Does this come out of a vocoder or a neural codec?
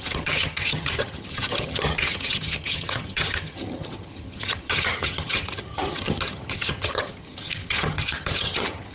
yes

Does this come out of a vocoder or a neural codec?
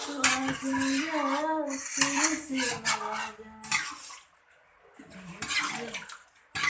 no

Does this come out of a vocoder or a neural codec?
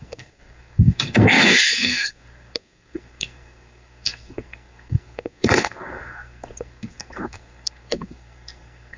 yes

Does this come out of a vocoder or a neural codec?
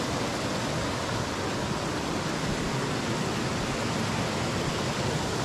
no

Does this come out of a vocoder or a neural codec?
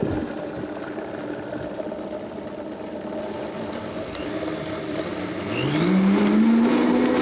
no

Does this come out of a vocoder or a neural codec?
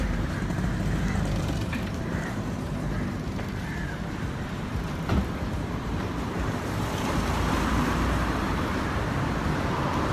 yes